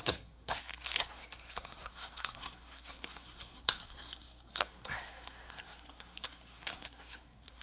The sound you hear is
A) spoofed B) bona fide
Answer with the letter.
A